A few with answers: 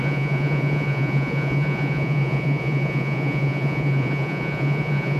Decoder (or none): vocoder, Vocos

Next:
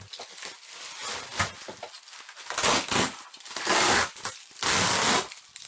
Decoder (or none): none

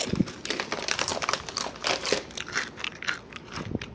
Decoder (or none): none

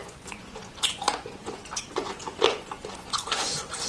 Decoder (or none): vocoder, Vocos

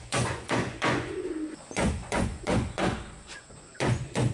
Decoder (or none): vocoder, Vocos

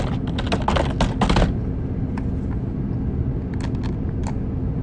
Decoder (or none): none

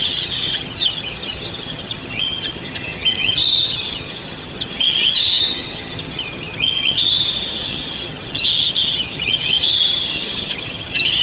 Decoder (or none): vocoder, HiFi-GAN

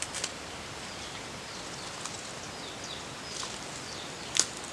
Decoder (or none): none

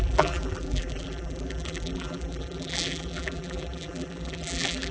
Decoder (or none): vocoder, BigVGAN v2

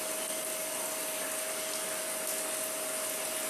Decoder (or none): none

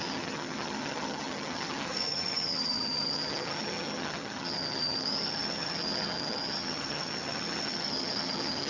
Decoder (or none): vocoder, HiFi-GAN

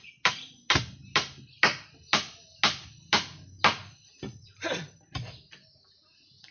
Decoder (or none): none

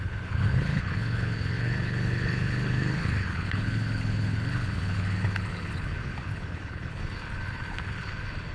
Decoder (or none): codec, HILCodec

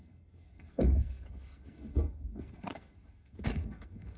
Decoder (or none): codec, SNAC